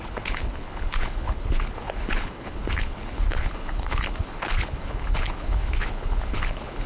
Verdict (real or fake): fake